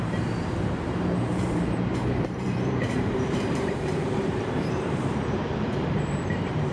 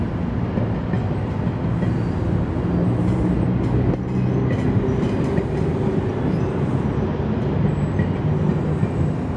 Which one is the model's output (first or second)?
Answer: first